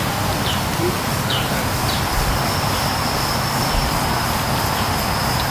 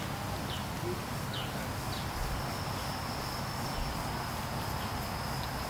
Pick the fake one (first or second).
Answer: first